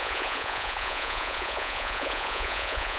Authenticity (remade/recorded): remade